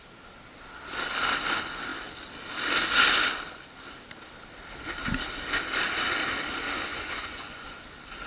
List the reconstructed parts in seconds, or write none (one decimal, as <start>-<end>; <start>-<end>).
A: 6.9-7.8